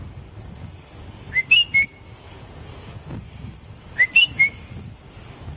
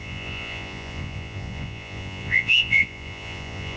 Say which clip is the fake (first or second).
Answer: second